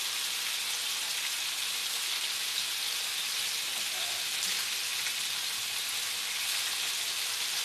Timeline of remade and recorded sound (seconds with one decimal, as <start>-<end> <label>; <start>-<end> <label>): 0.0-7.6 recorded